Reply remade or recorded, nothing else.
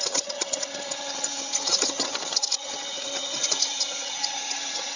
remade